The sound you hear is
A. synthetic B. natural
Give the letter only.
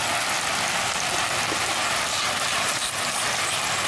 B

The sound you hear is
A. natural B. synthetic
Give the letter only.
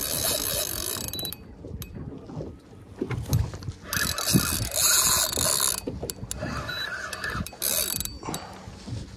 A